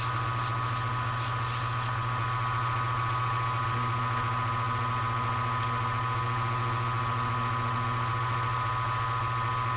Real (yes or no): yes